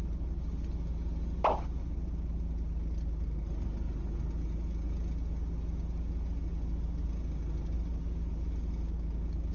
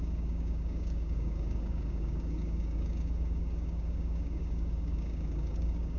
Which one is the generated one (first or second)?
second